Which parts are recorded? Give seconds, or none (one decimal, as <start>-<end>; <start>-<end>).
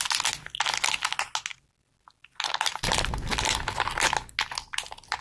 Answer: 0.0-5.2